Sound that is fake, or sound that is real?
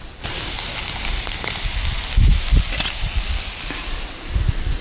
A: real